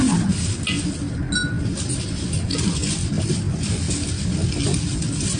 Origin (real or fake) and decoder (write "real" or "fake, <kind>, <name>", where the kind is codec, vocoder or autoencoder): real